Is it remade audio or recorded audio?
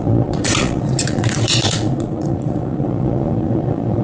remade